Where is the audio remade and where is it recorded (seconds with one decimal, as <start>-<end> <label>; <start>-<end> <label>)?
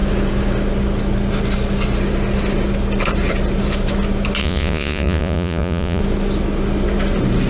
0.0-4.4 recorded; 4.4-6.0 remade; 6.0-7.5 recorded